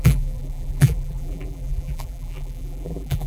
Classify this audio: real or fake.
fake